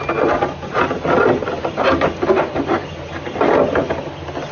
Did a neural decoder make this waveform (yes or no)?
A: no